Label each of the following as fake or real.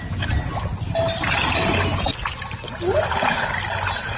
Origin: real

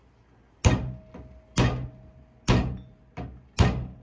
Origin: real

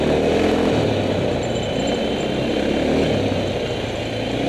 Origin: real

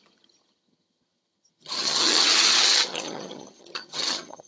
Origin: fake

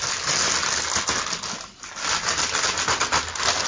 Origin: real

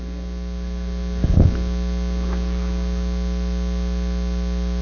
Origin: real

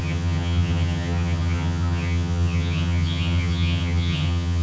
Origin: fake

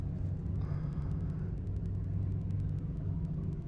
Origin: real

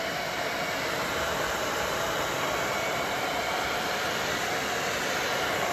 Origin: fake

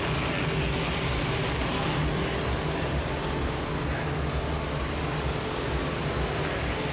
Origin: real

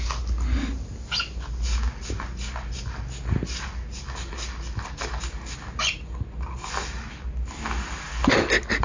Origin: real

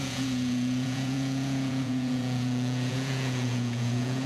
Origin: fake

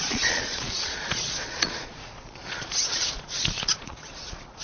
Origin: fake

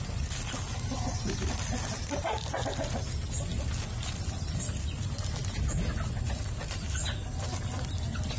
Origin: real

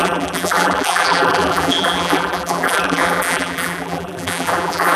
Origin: fake